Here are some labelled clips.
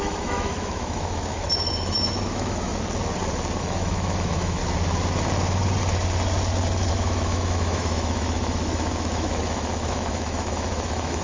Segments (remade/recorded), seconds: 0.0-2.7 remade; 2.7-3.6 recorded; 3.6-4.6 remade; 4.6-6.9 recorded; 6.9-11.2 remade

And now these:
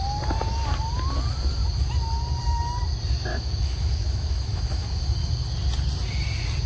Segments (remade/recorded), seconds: 0.0-3.3 recorded; 3.3-5.3 remade; 5.3-6.7 recorded

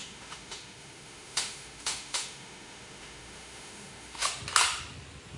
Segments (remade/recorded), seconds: 0.0-4.3 remade; 4.3-5.4 recorded

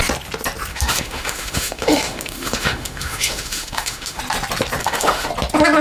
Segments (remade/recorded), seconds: 0.0-0.7 recorded; 0.7-4.2 remade; 4.2-4.8 recorded; 4.8-5.3 remade; 5.3-5.8 recorded

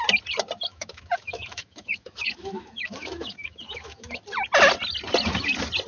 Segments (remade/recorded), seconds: 0.0-0.7 recorded; 0.7-4.2 remade; 4.2-5.9 recorded

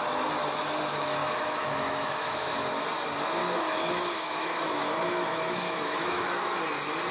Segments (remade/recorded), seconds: 0.0-1.2 recorded; 1.2-2.9 remade; 2.9-3.4 recorded; 3.4-6.6 remade; 6.6-7.1 recorded